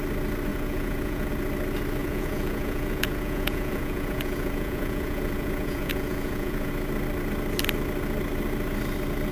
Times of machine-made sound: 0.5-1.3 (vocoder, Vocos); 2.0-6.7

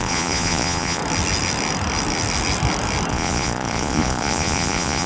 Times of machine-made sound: 0.0-1.0 (vocoder, Vocos); 3.1-5.1

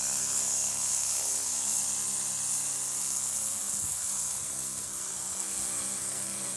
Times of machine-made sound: 0.0-1.8 (codec, SNAC); 3.0-6.6

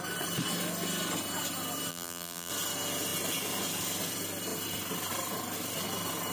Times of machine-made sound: 1.9-2.5 (vocoder, BigVGAN v2)

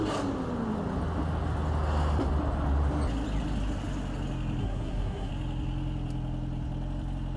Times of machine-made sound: 4.6-5.3 (codec, SNAC)

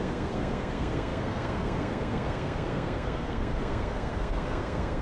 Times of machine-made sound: 0.0-5.0 (codec, SNAC)

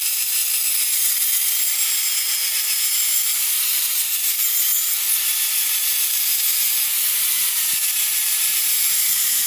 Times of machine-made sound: 0.0-0.4 (vocoder, BigVGAN v2); 2.5-4.7; 5.2-9.5

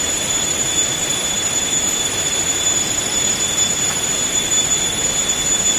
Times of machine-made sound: none